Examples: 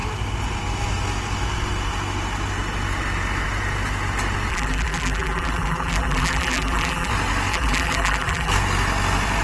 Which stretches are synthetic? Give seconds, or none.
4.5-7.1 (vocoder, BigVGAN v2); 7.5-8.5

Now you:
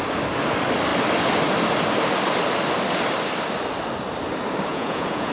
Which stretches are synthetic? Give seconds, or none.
4.7-5.3 (vocoder, Vocos)

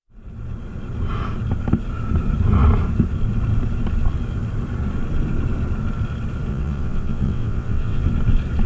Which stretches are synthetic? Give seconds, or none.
6.5-8.0 (vocoder, WaveNeXt)

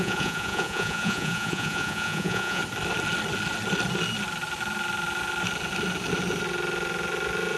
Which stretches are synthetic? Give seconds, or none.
0.0-2.6 (vocoder, Vocos)

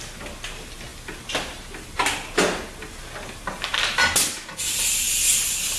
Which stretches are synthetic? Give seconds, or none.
none

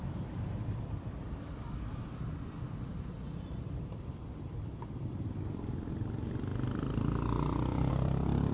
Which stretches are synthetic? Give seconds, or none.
0.0-6.5 (vocoder, BigVGAN v2); 7.9-8.5

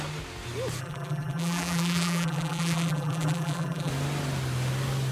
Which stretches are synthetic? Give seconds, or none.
0.8-3.9 (vocoder, BigVGAN v2)

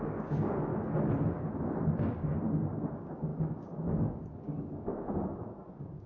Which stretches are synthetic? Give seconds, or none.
0.0-0.7 (codec, DAC); 1.9-2.3; 2.9-6.1